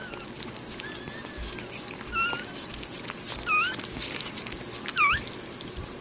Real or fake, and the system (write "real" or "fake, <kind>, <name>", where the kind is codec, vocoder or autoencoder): real